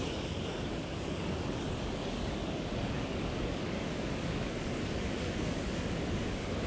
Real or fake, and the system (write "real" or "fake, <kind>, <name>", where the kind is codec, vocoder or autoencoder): fake, codec, DAC